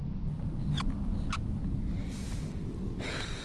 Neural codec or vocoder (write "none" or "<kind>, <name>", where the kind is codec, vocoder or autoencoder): none